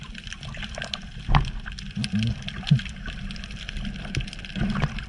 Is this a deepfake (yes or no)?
no